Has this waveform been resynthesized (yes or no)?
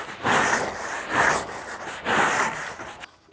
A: no